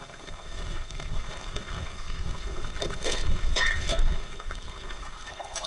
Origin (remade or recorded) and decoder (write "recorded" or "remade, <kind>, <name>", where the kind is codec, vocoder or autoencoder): remade, codec, SNAC